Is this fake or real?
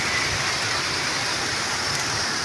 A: fake